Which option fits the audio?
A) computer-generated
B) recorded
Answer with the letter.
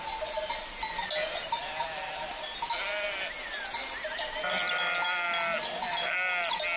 B